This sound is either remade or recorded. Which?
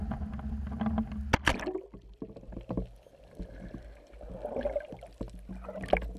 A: recorded